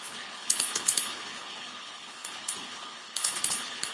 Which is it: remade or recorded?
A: remade